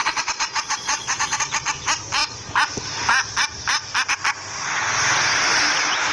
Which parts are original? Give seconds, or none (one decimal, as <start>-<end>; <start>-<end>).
1.4-6.1